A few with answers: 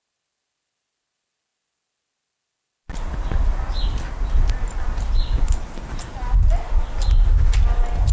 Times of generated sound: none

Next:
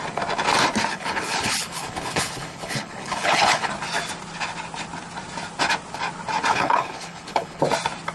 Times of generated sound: 0.9-3.7 (codec, HILCodec); 6.5-7.6

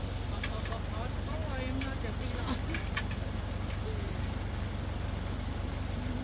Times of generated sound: none

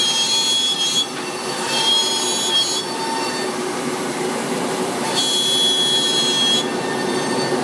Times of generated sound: none

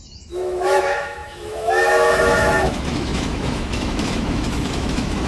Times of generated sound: 0.0-5.3 (autoencoder, DAC-VAE)

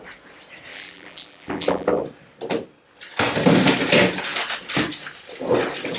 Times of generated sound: 0.7-2.0 (vocoder, BigVGAN v2)

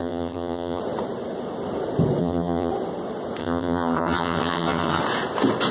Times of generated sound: 0.0-0.8 (vocoder, HiFi-GAN); 2.2-2.7; 3.4-5.0